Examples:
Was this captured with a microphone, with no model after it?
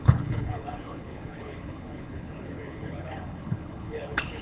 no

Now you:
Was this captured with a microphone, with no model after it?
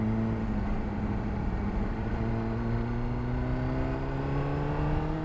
yes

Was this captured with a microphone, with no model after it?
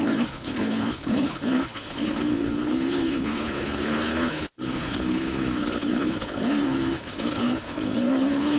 no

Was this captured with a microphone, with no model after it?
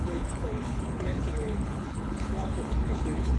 no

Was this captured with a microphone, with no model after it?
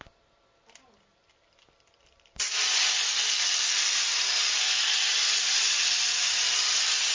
yes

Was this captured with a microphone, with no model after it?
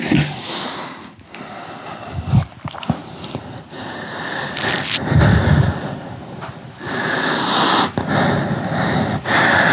yes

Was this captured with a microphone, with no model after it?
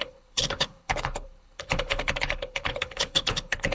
no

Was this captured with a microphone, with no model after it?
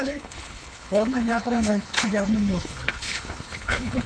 no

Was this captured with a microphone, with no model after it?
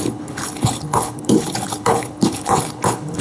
no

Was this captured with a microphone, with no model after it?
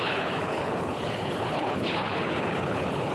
no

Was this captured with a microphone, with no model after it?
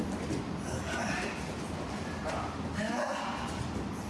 yes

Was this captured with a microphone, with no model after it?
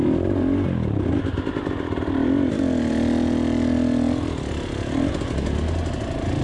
yes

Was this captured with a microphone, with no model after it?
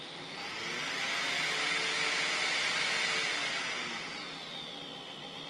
yes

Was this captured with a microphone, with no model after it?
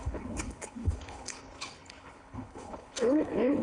no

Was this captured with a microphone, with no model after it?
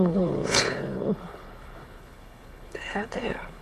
no